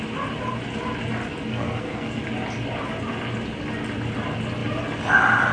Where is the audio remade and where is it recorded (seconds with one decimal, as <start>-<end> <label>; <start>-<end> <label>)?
0.0-1.5 recorded; 1.5-2.2 remade; 2.2-5.5 recorded